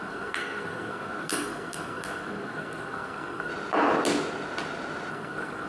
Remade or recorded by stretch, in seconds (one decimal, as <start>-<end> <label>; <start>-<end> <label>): 0.0-3.5 remade; 3.5-5.1 recorded; 5.1-5.7 remade